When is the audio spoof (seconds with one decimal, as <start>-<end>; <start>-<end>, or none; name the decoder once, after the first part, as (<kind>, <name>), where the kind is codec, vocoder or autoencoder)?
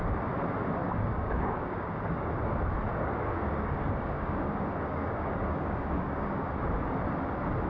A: 0.8-2.3 (codec, DAC); 2.9-6.5